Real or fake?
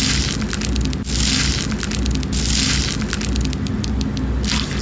real